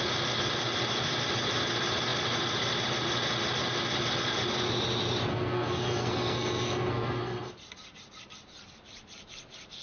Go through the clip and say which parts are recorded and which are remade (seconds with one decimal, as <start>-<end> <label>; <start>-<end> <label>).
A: 0.0-5.3 recorded; 5.3-7.5 remade; 7.5-9.8 recorded